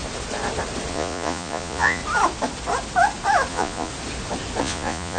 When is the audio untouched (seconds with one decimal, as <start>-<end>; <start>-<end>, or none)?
0.0-0.9; 2.0-3.5; 3.9-4.6